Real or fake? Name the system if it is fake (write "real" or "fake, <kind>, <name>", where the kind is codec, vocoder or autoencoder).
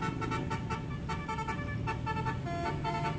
real